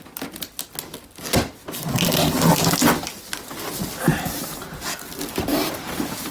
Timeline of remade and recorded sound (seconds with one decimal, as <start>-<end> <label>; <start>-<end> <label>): 0.0-4.1 recorded; 4.1-4.7 remade; 4.7-5.5 recorded; 5.5-6.3 remade